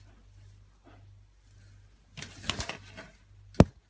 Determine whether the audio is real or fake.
real